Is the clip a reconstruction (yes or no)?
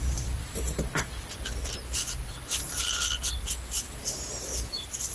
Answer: no